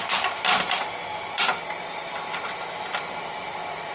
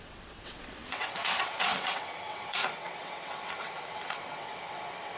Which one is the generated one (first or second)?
second